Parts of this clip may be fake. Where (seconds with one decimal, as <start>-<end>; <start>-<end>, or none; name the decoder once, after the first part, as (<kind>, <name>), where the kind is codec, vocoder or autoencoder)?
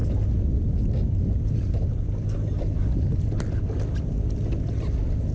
none